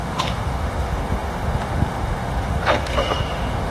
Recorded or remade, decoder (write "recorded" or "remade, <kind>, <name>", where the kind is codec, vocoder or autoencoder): remade, autoencoder, DAC-VAE